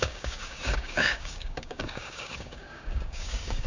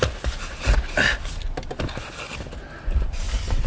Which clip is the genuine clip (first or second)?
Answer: second